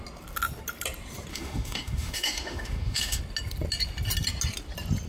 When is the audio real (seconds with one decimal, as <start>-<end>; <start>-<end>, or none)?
0.0-1.3; 3.2-5.1